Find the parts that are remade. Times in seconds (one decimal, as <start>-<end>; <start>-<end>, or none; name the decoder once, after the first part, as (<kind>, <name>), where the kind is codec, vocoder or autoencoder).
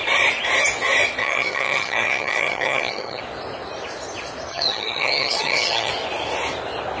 1.2-3.2 (vocoder, HiFi-GAN); 4.5-5.9